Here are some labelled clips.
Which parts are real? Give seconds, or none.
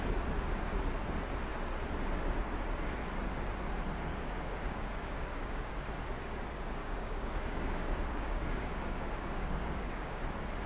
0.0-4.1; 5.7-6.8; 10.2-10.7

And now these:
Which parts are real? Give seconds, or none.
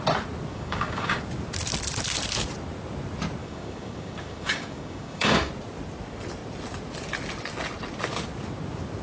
0.0-0.5; 1.2-3.4; 5.5-9.0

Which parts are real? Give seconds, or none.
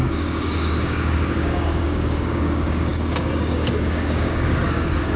none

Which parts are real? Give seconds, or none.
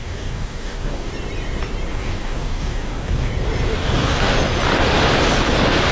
1.1-1.9; 3.3-3.8; 4.3-5.9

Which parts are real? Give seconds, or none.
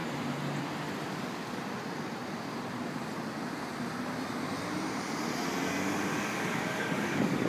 0.0-1.1; 1.6-6.1